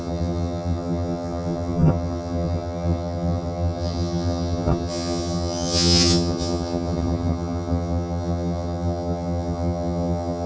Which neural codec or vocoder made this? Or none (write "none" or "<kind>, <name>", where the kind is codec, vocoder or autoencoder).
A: vocoder, HiFi-GAN